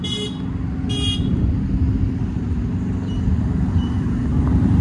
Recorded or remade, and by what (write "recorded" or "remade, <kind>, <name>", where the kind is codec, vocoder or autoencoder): recorded